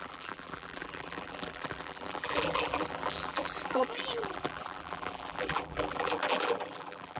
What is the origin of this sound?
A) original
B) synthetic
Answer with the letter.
B